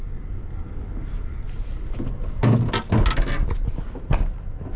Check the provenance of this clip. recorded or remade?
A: recorded